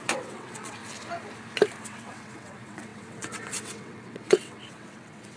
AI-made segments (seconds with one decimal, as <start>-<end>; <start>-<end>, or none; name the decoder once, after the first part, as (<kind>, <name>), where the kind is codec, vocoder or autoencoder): 0.0-0.8 (vocoder, WaveNeXt); 1.8-5.4